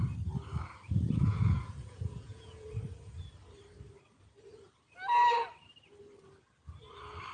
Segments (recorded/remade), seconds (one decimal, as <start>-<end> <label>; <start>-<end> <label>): 0.0-1.3 recorded; 1.3-2.7 remade; 2.7-7.3 recorded

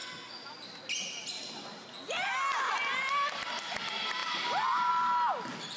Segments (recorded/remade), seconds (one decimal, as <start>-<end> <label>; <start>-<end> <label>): 0.0-5.8 recorded

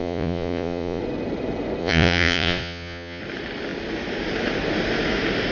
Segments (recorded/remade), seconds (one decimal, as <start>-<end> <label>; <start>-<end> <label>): 0.0-1.0 remade; 1.0-1.8 recorded; 1.8-3.2 remade; 3.2-5.5 recorded

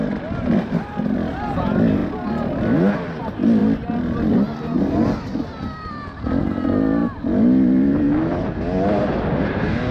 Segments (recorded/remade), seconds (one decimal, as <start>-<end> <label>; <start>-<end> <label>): 0.0-9.9 recorded

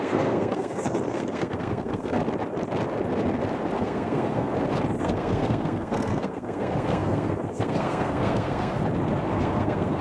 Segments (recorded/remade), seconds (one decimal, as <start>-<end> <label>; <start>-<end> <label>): 0.0-2.2 remade; 2.2-3.8 recorded; 3.8-4.5 remade; 4.5-5.0 recorded; 5.0-8.8 remade; 8.8-9.3 recorded; 9.3-10.0 remade

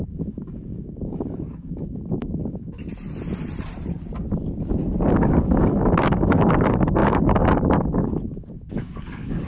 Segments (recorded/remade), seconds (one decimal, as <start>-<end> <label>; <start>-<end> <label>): 0.0-2.8 remade; 2.8-5.1 recorded; 5.1-9.5 remade

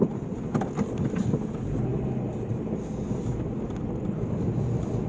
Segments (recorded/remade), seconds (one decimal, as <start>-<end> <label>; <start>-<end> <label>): 0.0-5.1 recorded